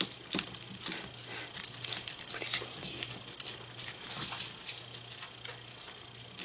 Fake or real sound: real